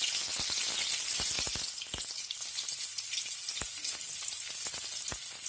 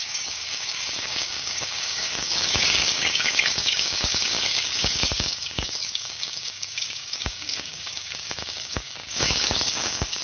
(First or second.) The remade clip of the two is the second